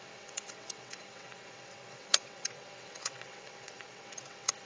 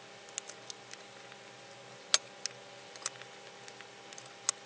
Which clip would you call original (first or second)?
second